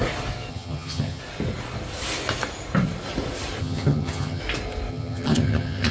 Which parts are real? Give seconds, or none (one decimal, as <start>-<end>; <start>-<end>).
0.0-0.5; 1.2-3.6; 4.4-4.9